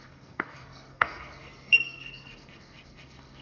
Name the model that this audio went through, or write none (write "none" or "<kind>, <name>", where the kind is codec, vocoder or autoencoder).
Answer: codec, SNAC